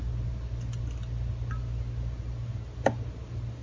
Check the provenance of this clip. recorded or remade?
recorded